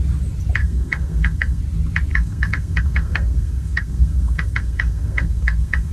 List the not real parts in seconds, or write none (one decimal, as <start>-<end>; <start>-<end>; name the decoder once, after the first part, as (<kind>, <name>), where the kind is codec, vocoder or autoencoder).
0.6-1.6 (codec, SNAC); 2.1-5.9